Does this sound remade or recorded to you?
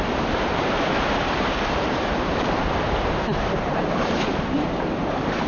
remade